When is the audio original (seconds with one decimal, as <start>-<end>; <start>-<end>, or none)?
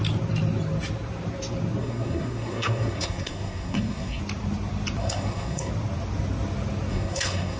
0.0-1.8; 4.2-5.0; 5.7-6.9